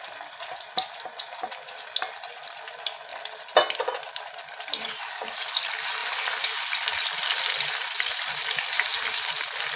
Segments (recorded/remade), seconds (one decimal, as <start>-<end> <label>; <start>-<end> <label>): 0.0-9.8 recorded